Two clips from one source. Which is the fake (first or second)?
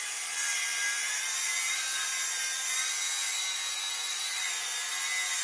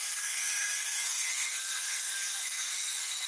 second